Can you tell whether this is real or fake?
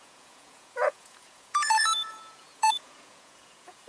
fake